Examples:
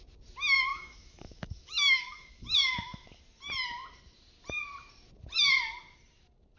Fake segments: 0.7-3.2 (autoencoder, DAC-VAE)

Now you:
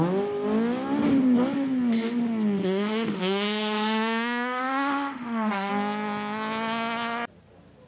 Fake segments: 2.6-5.7 (autoencoder, DAC-VAE)

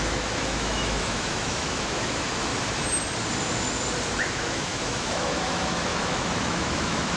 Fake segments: 0.0-2.5 (autoencoder, DAC-VAE); 4.2-7.2

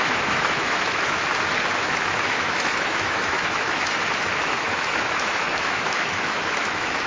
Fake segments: 0.0-1.2 (autoencoder, DAC-VAE); 1.8-7.1

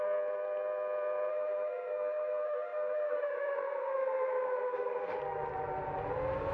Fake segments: 1.3-5.2 (autoencoder, DAC-VAE)

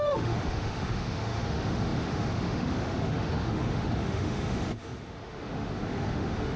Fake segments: 0.0-6.6 (autoencoder, DAC-VAE)